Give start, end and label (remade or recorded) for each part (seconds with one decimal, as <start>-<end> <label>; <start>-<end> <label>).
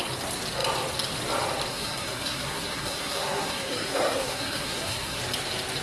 0.0-1.7 recorded; 1.7-5.2 remade; 5.2-5.8 recorded